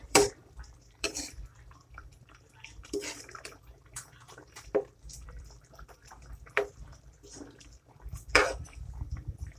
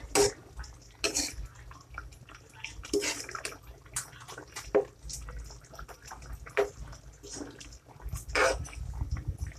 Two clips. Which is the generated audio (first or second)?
first